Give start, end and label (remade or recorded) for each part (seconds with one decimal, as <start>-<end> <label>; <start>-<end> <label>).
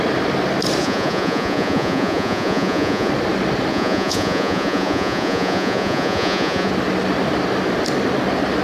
0.0-0.8 recorded; 0.8-3.1 remade; 3.1-3.7 recorded; 3.7-6.7 remade; 6.7-8.6 recorded